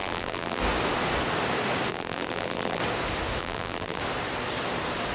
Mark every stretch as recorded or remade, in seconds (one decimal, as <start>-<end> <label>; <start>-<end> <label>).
0.0-0.6 remade; 0.6-1.9 recorded; 1.9-2.8 remade; 2.8-3.4 recorded; 3.4-4.0 remade; 4.0-5.1 recorded